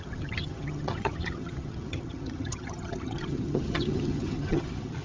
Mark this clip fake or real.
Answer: fake